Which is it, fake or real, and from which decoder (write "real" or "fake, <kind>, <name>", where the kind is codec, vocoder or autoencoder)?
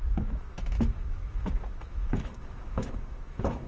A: fake, autoencoder, DAC-VAE